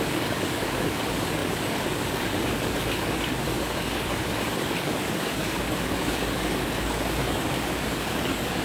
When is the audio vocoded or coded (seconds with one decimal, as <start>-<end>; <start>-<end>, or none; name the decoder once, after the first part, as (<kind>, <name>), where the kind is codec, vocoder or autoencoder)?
0.0-8.6 (codec, DAC)